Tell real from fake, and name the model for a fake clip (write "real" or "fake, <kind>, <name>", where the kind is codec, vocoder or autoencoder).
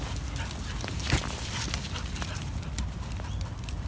real